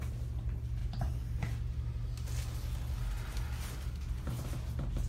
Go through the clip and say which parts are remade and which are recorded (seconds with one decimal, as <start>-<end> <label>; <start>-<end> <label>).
0.0-5.1 recorded